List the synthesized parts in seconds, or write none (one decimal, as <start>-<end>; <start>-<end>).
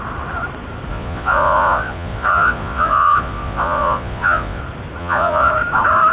0.9-4.6; 5.0-5.5